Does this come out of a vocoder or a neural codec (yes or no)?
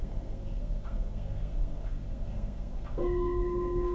yes